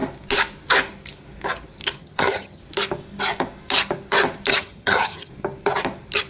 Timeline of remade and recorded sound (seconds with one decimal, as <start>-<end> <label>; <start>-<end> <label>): 0.0-2.0 recorded; 2.0-2.6 remade; 2.6-4.5 recorded; 4.5-5.3 remade; 5.3-6.3 recorded